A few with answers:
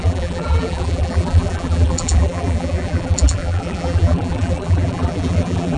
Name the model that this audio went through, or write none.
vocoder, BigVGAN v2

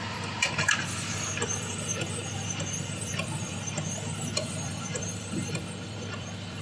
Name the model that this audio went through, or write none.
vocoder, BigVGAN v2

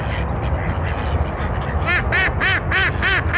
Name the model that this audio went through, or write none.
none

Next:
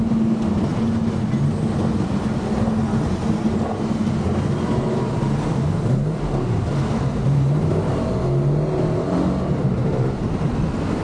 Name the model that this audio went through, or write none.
none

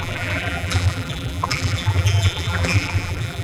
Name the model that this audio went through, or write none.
vocoder, BigVGAN v2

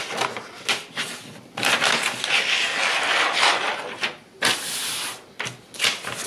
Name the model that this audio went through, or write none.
none